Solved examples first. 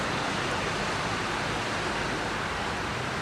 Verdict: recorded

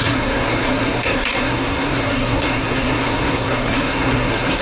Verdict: remade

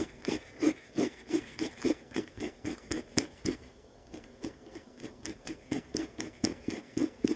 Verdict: remade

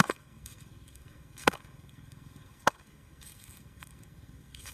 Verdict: remade